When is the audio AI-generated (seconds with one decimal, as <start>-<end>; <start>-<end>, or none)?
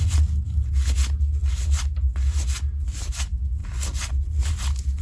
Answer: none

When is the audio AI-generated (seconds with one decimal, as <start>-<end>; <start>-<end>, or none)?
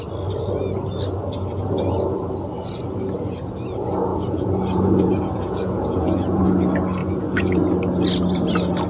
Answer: 4.1-6.4; 7.0-7.6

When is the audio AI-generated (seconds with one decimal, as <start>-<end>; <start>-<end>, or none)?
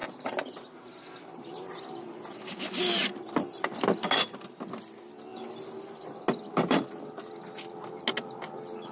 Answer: none